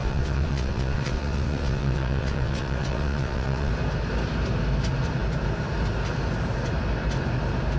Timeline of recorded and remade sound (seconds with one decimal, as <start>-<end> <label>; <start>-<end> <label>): 0.0-3.7 remade; 3.7-7.8 recorded